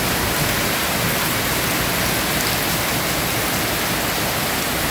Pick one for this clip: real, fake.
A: real